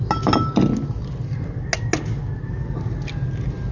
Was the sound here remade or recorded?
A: recorded